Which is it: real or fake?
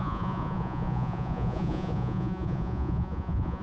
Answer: fake